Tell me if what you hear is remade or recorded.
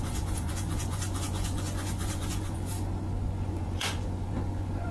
remade